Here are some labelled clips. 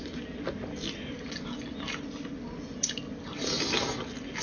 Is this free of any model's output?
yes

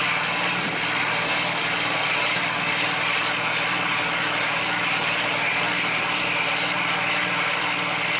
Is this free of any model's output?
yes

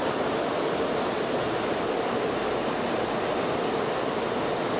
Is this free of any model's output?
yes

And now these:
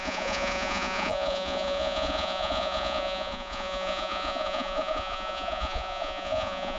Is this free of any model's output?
no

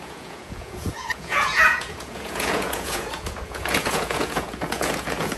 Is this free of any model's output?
no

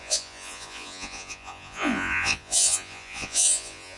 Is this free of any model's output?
no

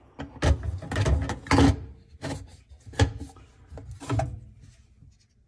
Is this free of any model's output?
yes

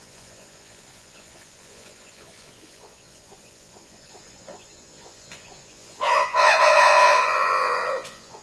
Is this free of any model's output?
no